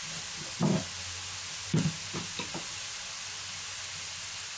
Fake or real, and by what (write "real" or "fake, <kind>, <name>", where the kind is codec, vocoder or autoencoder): real